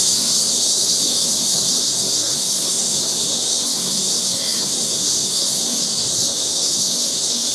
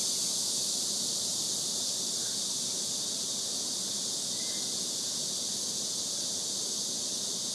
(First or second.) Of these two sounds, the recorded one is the second